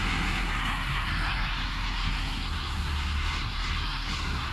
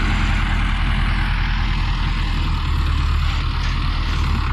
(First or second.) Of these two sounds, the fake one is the first